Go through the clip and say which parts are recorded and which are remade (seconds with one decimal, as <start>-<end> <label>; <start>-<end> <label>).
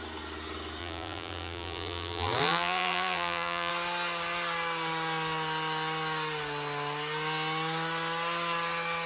0.0-0.8 recorded; 0.8-3.7 remade; 3.7-9.1 recorded